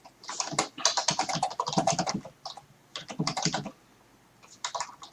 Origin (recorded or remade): recorded